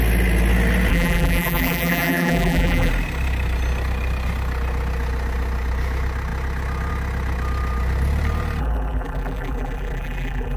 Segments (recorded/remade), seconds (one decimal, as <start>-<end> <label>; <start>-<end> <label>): 0.0-0.9 recorded; 0.9-2.9 remade; 2.9-8.6 recorded; 8.6-10.6 remade